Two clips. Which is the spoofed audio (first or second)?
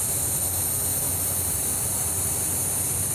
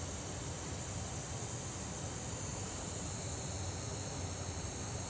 second